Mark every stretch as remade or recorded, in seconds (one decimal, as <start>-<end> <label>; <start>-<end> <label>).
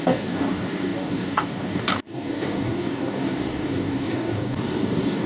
0.0-5.3 remade